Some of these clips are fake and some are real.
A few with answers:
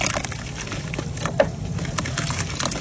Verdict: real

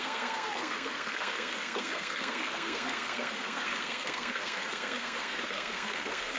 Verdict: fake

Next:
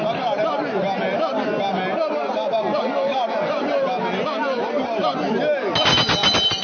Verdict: real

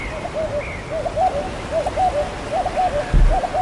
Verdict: real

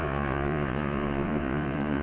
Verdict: fake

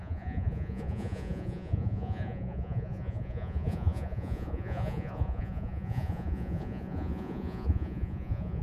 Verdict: fake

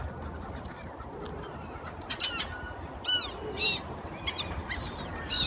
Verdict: real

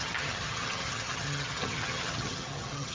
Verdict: fake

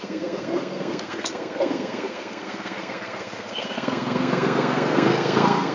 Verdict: fake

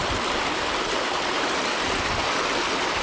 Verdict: real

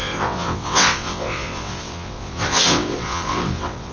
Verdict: fake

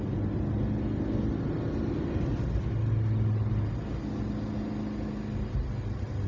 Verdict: real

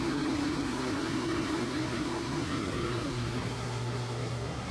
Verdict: fake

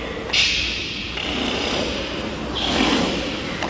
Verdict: real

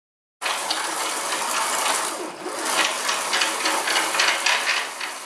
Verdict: real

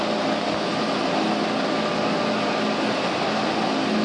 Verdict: real